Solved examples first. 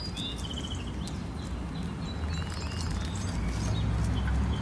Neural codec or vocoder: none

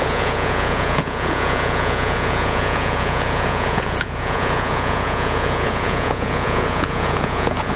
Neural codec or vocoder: vocoder, Vocos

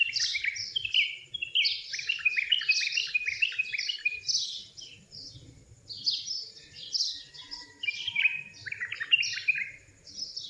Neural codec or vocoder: none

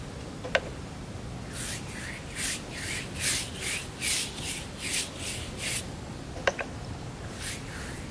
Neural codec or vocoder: none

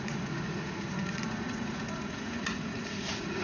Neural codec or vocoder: vocoder, Vocos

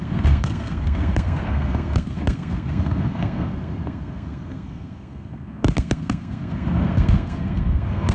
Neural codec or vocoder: codec, SNAC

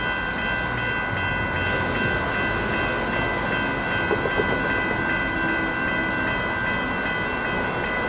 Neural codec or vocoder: none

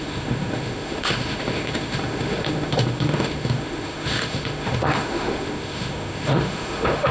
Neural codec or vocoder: autoencoder, DAC-VAE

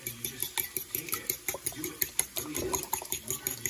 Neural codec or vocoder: none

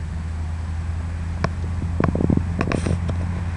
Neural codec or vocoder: none